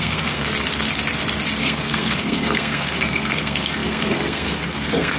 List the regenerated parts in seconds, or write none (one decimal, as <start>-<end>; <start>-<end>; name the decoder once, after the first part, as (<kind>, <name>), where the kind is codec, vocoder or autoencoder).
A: 0.0-0.5 (codec, SNAC); 1.6-5.2